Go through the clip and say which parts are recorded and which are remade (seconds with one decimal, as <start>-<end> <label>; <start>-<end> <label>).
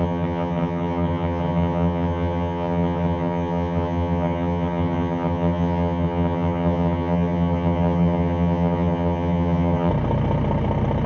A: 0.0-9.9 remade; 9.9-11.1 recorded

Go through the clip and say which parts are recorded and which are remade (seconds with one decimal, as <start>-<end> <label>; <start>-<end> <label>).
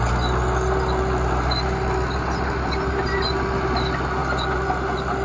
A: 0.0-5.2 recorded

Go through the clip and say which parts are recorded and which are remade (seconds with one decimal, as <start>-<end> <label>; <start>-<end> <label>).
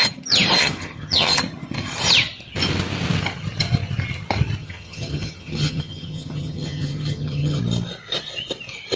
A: 0.0-0.6 recorded; 0.6-1.4 remade; 1.4-4.6 recorded; 4.6-7.6 remade; 7.6-9.0 recorded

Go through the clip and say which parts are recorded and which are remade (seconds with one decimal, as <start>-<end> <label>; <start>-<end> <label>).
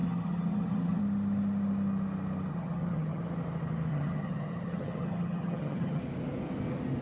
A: 0.0-1.0 remade; 1.0-2.5 recorded; 2.5-3.2 remade; 3.2-3.9 recorded; 3.9-6.0 remade; 6.0-7.0 recorded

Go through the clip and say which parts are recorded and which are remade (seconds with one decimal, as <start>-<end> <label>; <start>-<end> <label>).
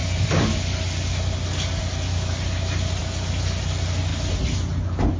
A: 0.0-5.2 recorded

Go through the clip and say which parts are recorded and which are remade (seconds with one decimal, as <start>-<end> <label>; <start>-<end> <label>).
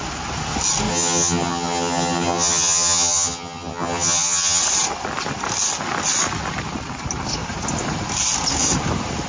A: 0.0-0.9 recorded; 0.9-4.6 remade; 4.6-9.3 recorded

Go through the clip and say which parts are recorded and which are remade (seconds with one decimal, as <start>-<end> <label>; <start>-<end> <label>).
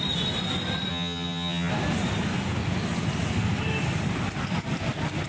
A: 0.0-0.9 recorded; 0.9-1.7 remade; 1.7-5.3 recorded